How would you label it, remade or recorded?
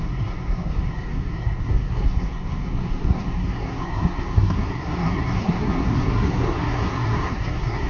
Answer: remade